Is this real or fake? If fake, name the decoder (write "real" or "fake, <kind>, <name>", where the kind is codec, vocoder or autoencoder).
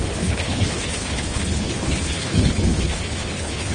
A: fake, codec, HILCodec